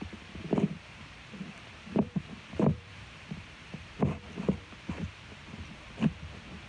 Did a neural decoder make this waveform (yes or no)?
yes